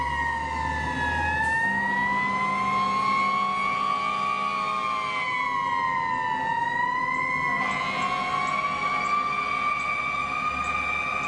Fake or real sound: real